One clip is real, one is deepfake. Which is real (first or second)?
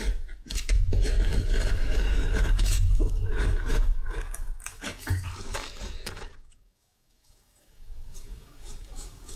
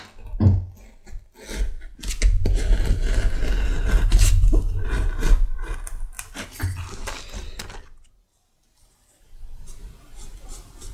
second